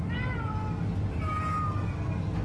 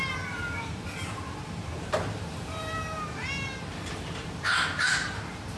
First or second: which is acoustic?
first